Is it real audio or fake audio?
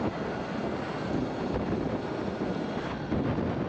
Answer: real